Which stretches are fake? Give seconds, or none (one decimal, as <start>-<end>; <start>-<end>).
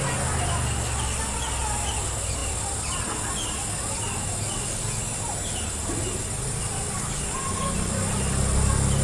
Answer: none